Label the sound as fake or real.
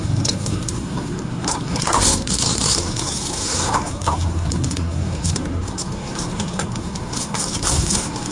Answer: fake